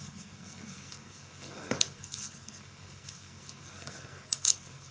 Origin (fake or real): fake